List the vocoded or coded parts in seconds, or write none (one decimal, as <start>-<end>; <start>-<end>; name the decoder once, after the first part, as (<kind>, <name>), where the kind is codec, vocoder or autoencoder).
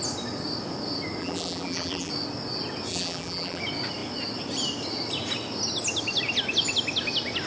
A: 1.2-2.1 (vocoder, BigVGAN v2); 2.9-3.6